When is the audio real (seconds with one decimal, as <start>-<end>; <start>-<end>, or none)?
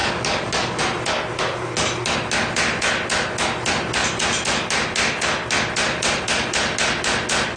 0.8-7.6